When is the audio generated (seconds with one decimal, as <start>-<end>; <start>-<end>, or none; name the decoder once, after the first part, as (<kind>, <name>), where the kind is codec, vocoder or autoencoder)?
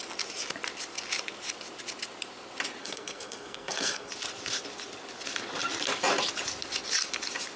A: 2.8-4.1 (codec, SNAC)